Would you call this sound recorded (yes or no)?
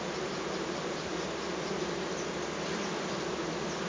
yes